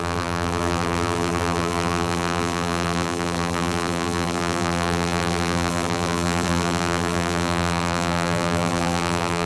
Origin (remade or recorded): remade